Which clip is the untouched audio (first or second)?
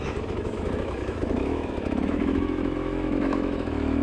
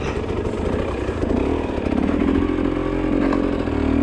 second